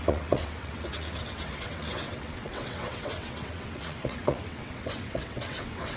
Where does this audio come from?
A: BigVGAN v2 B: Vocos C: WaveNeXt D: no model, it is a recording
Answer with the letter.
C